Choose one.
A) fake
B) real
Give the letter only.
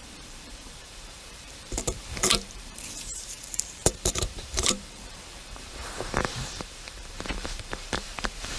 A